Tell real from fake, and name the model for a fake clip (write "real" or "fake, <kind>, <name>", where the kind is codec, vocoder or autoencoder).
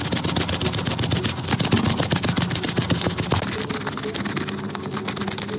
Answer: real